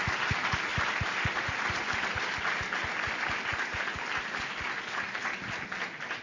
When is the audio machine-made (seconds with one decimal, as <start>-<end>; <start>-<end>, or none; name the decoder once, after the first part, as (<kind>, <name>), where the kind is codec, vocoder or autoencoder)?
0.7-4.4 (vocoder, BigVGAN v2)